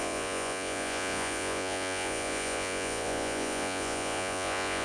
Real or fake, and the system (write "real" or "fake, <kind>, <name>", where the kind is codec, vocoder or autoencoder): fake, vocoder, Vocos